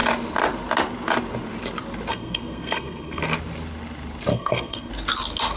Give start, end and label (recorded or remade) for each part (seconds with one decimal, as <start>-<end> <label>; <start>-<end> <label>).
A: 0.0-2.1 recorded; 2.1-3.2 remade; 3.2-4.3 recorded; 4.3-4.9 remade; 4.9-5.6 recorded

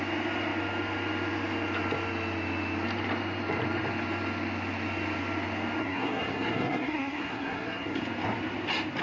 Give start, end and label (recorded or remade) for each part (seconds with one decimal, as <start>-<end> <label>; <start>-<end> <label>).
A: 0.0-5.8 recorded; 5.8-8.0 remade; 8.0-9.0 recorded

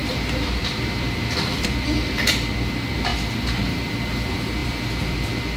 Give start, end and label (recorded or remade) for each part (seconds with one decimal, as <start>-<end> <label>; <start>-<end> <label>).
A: 0.0-2.3 remade; 2.3-3.1 recorded; 3.1-4.0 remade; 4.0-4.6 recorded; 4.6-5.6 remade

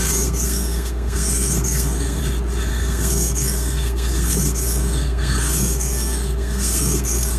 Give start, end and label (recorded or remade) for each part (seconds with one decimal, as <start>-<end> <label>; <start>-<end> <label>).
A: 0.0-2.2 remade; 2.2-2.7 recorded; 2.7-7.4 remade

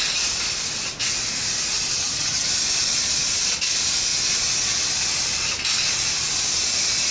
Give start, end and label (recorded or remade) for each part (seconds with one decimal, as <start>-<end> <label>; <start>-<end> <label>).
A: 0.0-1.9 recorded; 1.9-2.5 remade; 2.5-7.1 recorded